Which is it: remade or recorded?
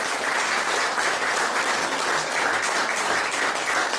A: recorded